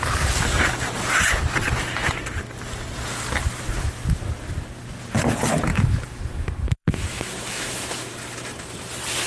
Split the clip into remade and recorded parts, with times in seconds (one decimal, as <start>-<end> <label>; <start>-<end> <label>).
0.0-5.7 recorded; 5.7-8.1 remade; 8.1-9.3 recorded